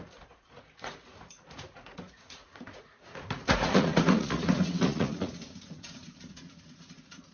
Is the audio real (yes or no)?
no